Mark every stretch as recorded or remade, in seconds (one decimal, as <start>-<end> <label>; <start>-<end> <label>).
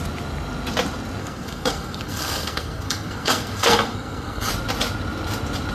0.0-1.2 recorded; 1.2-4.5 remade; 4.5-5.7 recorded